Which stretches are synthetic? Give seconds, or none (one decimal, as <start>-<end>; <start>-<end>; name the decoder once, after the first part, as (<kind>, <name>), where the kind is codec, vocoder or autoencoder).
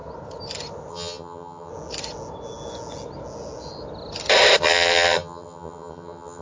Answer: 0.9-1.7 (vocoder, HiFi-GAN); 4.6-6.4